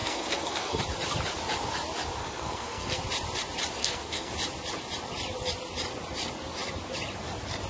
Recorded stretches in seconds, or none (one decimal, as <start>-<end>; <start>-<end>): 0.8-2.2; 3.0-3.8; 4.3-7.7